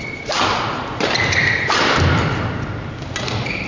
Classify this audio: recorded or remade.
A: recorded